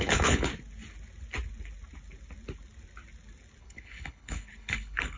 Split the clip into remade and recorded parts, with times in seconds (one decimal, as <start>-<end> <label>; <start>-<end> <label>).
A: 0.0-0.5 remade; 0.5-3.6 recorded; 3.6-5.2 remade